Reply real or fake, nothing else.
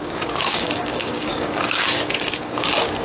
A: fake